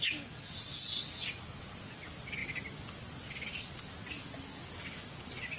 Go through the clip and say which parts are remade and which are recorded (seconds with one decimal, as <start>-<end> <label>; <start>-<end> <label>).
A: 0.0-5.6 recorded